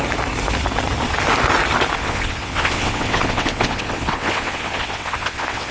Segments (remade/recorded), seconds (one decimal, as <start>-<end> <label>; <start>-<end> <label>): 0.0-2.0 recorded; 2.0-5.7 remade